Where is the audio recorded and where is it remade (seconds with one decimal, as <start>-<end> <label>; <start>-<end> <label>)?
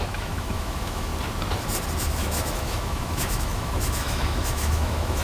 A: 0.0-1.1 remade; 1.1-2.0 recorded; 2.0-5.2 remade